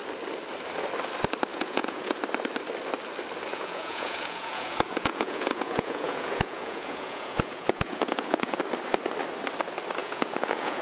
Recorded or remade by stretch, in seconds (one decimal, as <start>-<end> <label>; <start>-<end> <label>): 0.0-1.5 recorded; 1.5-2.2 remade; 2.2-3.5 recorded; 3.5-8.6 remade; 8.6-10.0 recorded; 10.0-10.8 remade